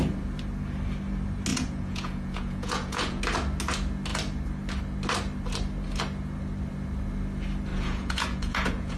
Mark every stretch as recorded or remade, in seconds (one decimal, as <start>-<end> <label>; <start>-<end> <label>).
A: 0.0-1.5 recorded; 1.5-3.2 remade; 3.2-7.7 recorded; 7.7-9.0 remade